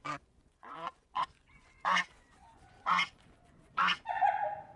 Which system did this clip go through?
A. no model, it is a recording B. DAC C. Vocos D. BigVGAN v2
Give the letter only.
C